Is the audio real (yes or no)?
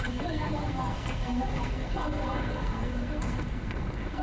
no